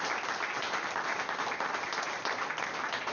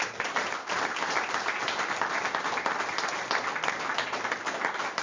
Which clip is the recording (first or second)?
second